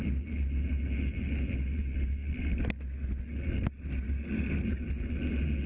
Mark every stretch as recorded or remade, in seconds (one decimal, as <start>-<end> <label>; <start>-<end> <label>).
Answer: 0.0-5.7 recorded